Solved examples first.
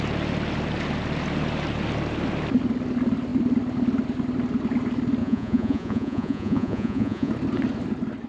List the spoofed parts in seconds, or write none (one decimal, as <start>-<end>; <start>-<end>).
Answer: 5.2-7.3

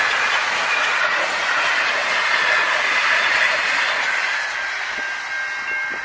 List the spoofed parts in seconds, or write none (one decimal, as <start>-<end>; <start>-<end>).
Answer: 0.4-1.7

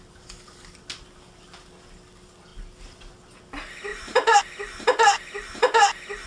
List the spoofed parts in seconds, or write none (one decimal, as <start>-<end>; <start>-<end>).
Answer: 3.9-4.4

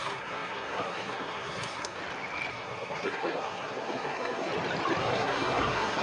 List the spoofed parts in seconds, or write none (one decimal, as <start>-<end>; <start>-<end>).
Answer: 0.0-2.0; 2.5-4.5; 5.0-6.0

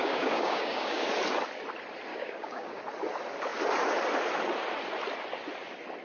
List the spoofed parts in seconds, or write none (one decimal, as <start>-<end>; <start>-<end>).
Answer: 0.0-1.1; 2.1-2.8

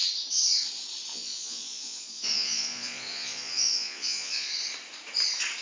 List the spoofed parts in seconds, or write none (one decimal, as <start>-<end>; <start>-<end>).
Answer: 1.1-4.5

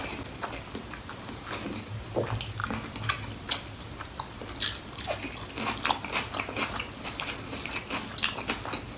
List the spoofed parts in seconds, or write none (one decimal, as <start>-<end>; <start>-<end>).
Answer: none

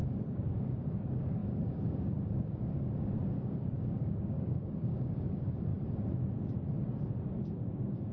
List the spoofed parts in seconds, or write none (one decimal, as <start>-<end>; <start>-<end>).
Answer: 0.0-5.7; 7.4-8.1